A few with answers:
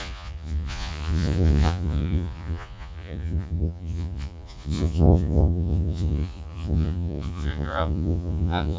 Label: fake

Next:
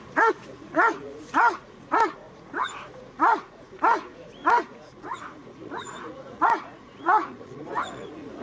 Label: fake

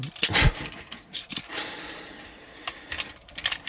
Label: real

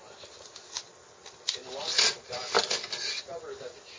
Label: real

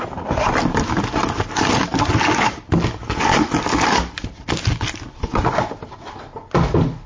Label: real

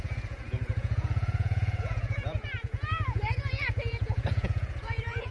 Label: fake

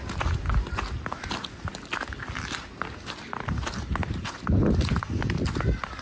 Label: real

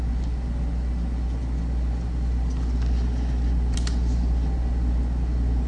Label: real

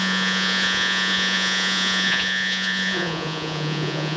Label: fake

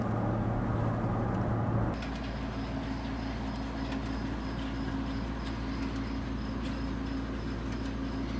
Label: real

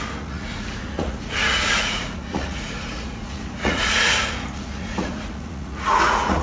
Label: fake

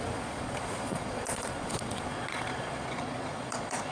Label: fake